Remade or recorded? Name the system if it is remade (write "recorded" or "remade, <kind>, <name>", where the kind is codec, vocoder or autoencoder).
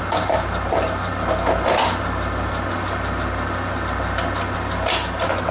recorded